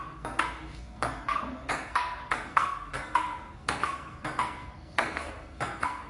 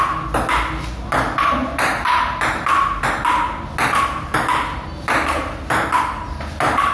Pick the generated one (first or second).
first